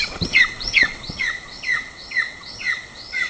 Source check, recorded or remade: remade